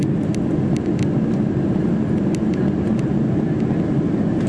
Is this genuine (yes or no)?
yes